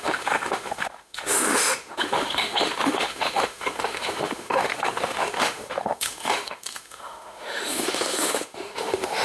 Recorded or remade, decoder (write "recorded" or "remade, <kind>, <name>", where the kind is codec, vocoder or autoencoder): remade, autoencoder, DAC-VAE